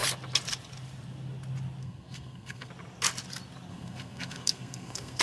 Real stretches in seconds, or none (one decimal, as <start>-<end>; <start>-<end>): 0.0-1.8; 2.7-3.7